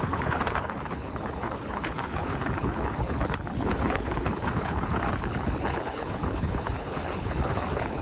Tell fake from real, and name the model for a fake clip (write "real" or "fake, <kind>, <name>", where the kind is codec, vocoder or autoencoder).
fake, codec, HILCodec